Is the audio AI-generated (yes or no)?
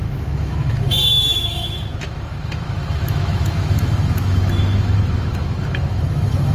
yes